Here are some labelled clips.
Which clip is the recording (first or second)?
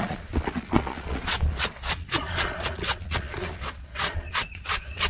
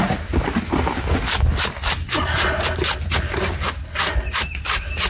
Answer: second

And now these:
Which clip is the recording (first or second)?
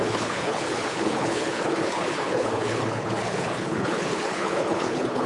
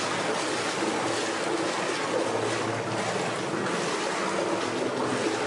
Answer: second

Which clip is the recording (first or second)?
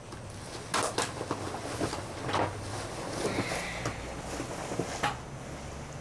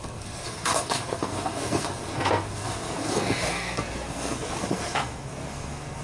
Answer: first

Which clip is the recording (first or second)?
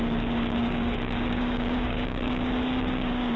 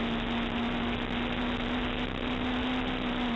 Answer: second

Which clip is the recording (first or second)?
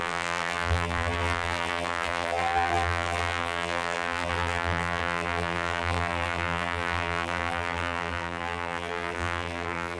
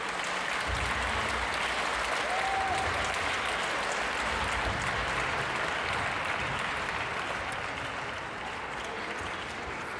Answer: second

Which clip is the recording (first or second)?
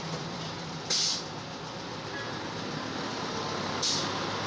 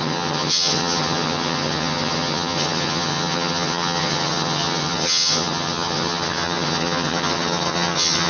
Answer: first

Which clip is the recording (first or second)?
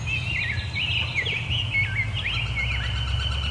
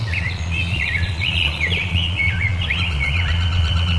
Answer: first